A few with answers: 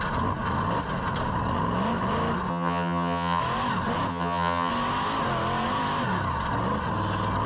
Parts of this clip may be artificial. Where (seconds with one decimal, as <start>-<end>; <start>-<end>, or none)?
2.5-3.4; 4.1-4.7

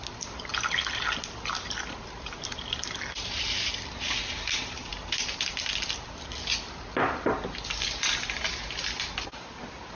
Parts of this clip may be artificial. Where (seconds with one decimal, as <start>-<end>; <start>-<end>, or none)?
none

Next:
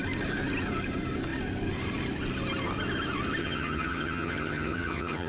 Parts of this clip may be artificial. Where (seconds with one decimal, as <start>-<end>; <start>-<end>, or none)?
3.4-5.3

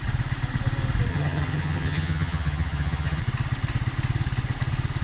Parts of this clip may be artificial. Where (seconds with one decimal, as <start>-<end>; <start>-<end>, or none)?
1.1-3.2

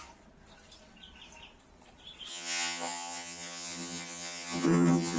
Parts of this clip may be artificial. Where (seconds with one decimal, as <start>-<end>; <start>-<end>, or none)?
2.3-5.2